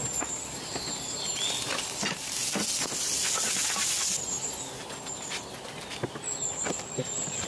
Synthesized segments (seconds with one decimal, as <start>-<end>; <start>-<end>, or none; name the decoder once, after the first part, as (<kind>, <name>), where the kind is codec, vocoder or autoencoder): 0.0-2.4 (vocoder, BigVGAN v2); 6.4-7.5